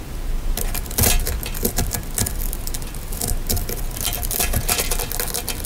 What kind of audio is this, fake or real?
real